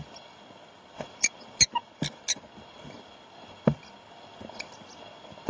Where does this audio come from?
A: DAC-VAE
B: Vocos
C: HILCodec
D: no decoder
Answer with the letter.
D